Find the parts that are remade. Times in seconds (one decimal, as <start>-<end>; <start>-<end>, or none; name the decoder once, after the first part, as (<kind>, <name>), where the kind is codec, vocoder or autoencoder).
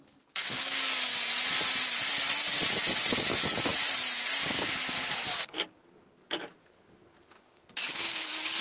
0.0-1.1 (codec, DAC); 2.9-3.7; 5.3-8.6